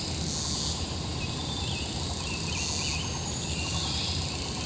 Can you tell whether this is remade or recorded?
recorded